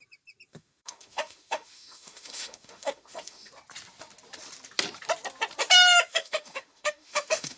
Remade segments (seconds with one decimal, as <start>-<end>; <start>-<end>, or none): 0.5-3.5; 6.1-7.6